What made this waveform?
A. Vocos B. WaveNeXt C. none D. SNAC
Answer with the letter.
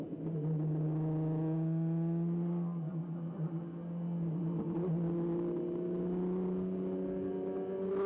C